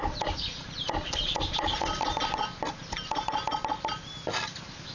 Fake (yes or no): no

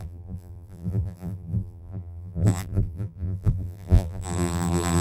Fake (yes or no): yes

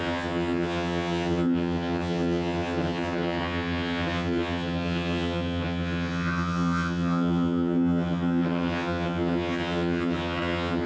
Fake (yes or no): yes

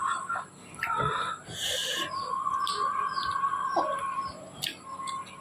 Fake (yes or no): no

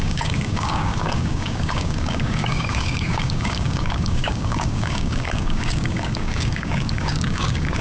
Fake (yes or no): yes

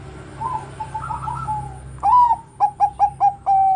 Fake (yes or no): no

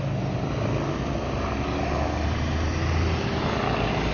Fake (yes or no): no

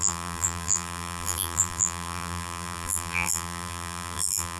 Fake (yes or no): yes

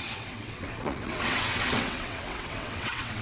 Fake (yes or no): yes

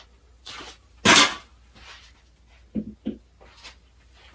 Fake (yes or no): no